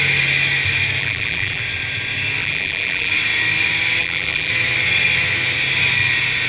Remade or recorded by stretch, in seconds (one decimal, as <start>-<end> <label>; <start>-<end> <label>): 0.0-1.0 recorded; 1.0-1.6 remade; 1.6-2.4 recorded; 2.4-3.1 remade; 3.1-4.0 recorded; 4.0-4.5 remade; 4.5-6.5 recorded